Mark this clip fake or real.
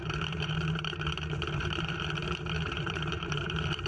fake